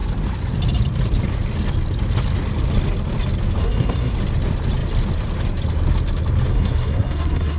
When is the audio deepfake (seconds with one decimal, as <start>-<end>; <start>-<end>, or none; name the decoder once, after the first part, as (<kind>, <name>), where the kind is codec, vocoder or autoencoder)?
3.6-4.1 (codec, SNAC); 6.5-7.6

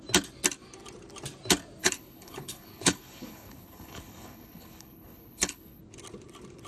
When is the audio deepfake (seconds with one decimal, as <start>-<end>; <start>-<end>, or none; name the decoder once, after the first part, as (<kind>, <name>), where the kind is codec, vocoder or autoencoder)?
1.8-5.8 (codec, HILCodec)

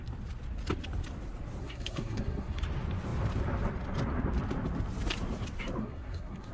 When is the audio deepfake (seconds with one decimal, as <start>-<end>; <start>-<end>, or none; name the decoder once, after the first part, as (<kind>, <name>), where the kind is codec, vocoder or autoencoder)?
1.6-2.6 (codec, SNAC); 5.8-6.5

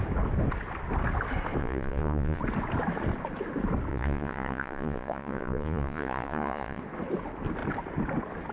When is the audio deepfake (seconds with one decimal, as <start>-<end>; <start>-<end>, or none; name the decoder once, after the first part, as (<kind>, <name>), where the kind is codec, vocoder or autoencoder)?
1.6-2.4 (vocoder, Vocos); 3.9-6.8